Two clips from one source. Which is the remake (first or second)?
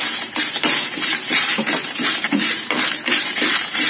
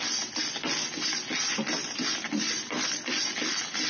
first